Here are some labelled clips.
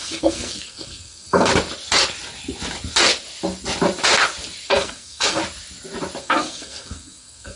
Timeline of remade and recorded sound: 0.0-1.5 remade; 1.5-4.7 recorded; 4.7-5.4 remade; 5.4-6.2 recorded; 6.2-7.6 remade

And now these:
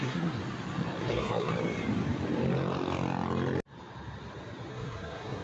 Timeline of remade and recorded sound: 0.0-0.4 remade; 0.4-1.0 recorded; 1.0-1.5 remade; 1.5-4.7 recorded; 4.7-5.4 remade

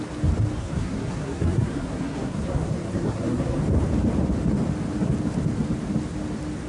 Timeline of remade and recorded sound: 0.0-0.6 recorded; 0.6-3.6 remade; 3.6-6.7 recorded

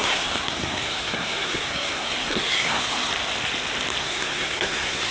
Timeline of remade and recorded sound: 0.0-3.1 remade; 3.1-4.0 recorded; 4.0-5.1 remade

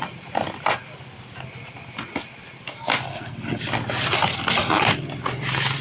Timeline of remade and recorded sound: 0.0-3.1 recorded; 3.1-3.6 remade; 3.6-5.8 recorded

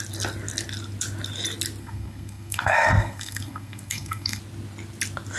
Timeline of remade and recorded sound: 0.0-1.8 recorded; 1.8-4.4 remade; 4.4-5.4 recorded

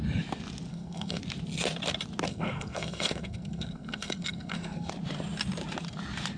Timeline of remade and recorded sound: 0.0-0.7 recorded; 0.7-1.2 remade; 1.2-2.3 recorded; 2.3-4.9 remade; 4.9-6.4 recorded

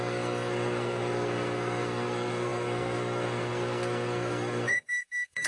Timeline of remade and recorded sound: 0.0-5.5 remade